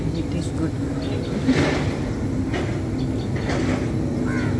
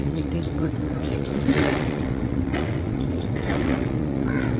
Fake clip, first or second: second